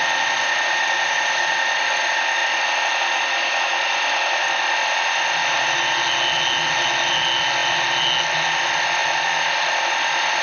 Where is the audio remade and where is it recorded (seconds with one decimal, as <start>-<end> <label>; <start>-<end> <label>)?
0.0-9.0 recorded; 9.0-9.6 remade; 9.6-10.4 recorded